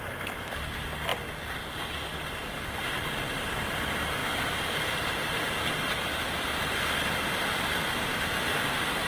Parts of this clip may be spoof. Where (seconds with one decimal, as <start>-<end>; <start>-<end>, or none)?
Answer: 3.0-3.7; 4.2-5.3